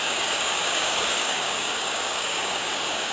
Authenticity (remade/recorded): remade